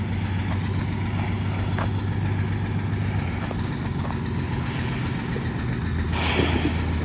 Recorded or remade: recorded